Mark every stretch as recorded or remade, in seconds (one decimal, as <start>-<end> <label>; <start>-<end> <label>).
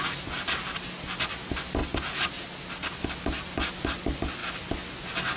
0.0-5.4 recorded